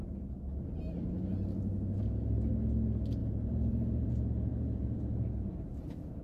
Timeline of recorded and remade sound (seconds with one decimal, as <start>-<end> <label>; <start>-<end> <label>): 0.0-3.2 recorded; 3.2-4.1 remade; 4.1-4.5 recorded; 4.5-5.5 remade; 5.5-6.2 recorded